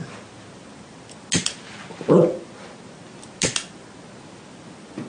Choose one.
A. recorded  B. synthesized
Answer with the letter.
A